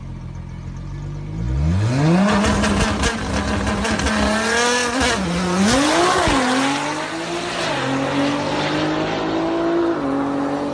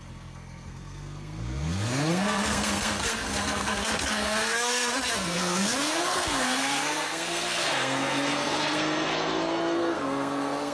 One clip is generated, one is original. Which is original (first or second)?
first